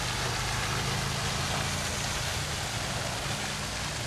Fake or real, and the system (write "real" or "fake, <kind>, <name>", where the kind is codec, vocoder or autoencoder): real